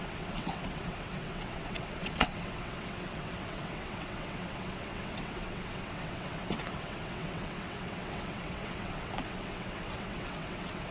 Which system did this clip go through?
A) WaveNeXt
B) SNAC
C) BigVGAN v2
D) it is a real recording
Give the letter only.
A